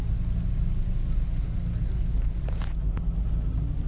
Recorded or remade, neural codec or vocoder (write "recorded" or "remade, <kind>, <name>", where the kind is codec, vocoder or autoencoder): recorded